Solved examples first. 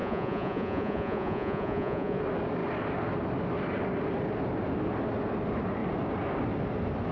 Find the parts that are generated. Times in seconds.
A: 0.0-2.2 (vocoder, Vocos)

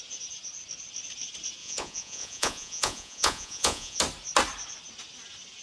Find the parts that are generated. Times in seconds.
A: 1.6-4.0 (vocoder, Vocos)

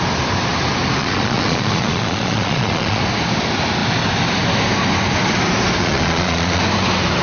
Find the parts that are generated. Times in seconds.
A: 1.0-3.0 (vocoder, Vocos); 5.8-6.6

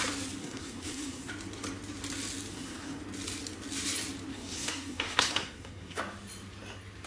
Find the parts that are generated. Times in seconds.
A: 0.4-1.3 (codec, SNAC); 2.5-3.0; 4.3-6.0

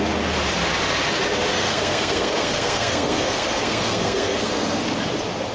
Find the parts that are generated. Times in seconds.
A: 1.5-4.8 (codec, SNAC)

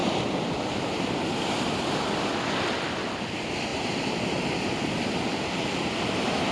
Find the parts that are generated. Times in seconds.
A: 0.0-1.7 (vocoder, BigVGAN v2); 3.7-4.5

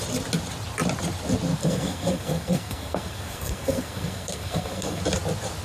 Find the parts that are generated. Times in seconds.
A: 1.6-5.0 (codec, SNAC)

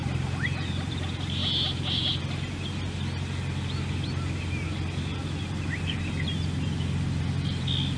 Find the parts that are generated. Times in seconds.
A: none